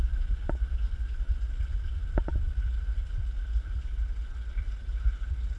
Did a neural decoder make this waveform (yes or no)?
no